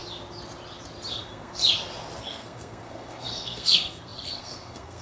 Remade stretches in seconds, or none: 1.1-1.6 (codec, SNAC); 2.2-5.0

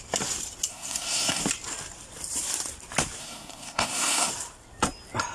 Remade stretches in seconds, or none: 0.7-1.4 (codec, SNAC); 3.2-4.3